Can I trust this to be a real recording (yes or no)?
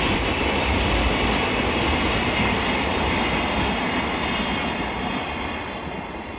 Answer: no